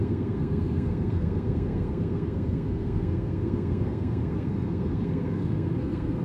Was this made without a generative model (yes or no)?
no